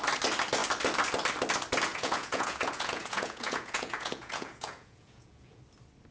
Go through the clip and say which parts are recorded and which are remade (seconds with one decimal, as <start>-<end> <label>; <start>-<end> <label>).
0.0-1.9 recorded; 1.9-5.6 remade; 5.6-6.1 recorded